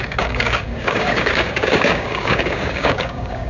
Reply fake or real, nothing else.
fake